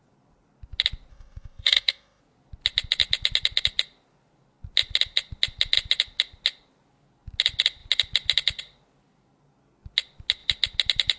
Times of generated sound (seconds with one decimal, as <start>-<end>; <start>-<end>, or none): 1.1-2.2